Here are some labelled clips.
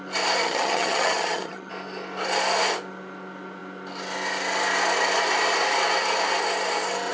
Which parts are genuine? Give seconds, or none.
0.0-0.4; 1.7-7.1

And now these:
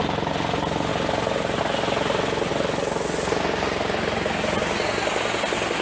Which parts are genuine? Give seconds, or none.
0.0-5.8

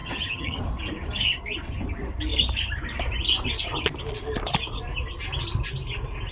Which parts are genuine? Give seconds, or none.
0.6-6.3

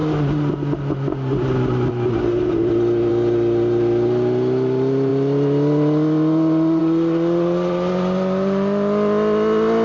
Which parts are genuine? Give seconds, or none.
0.0-9.8

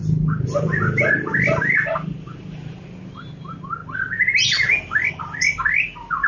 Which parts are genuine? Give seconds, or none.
0.0-6.3

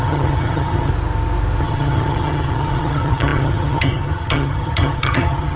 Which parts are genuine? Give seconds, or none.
0.9-1.6